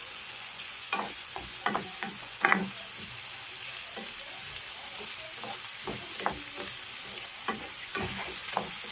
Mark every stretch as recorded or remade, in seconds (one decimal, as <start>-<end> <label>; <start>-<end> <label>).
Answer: 0.0-2.6 remade; 2.6-7.5 recorded; 7.5-8.9 remade